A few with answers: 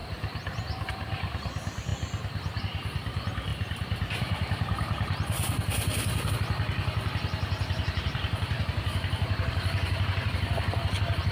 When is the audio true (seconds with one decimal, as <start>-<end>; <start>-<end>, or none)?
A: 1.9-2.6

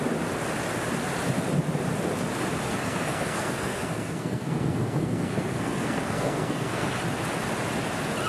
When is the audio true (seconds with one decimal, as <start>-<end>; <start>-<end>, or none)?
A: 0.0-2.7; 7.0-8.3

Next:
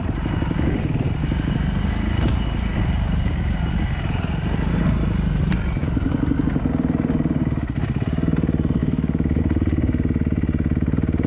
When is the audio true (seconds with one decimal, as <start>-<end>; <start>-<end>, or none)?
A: 0.0-8.8; 9.4-11.3

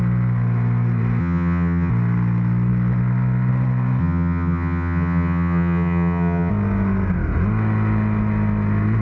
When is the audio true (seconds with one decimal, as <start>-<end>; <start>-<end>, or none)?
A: 0.0-1.2; 1.9-4.0; 6.5-9.0